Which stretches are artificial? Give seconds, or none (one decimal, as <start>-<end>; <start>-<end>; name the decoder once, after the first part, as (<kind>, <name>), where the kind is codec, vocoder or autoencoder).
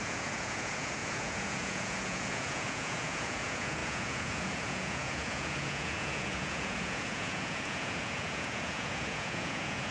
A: 0.0-9.9 (vocoder, Vocos)